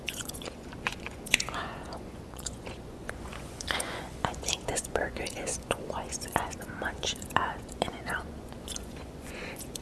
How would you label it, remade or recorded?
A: remade